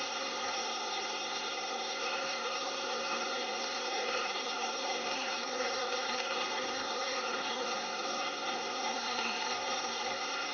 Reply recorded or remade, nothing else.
remade